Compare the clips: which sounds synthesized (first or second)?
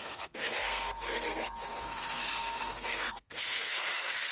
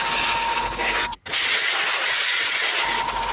first